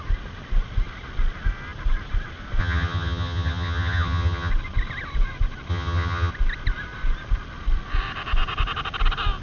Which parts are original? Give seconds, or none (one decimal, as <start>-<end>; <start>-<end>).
0.0-2.6; 4.5-5.7; 6.3-9.4